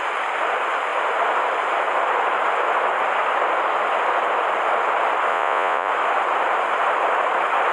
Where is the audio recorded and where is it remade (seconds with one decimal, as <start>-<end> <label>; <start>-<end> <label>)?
0.0-5.3 recorded; 5.3-5.9 remade; 5.9-7.7 recorded

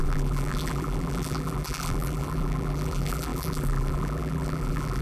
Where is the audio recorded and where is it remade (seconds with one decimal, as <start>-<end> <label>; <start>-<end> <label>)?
0.0-5.0 remade